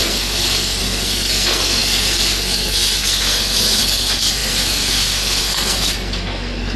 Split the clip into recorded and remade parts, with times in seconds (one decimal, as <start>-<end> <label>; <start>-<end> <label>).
0.0-6.8 remade